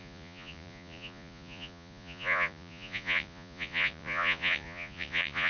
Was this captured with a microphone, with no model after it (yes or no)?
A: no